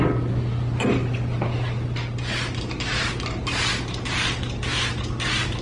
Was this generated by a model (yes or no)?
yes